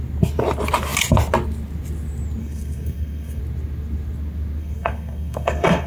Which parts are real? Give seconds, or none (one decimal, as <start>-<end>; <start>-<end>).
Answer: 0.0-2.4; 3.4-4.6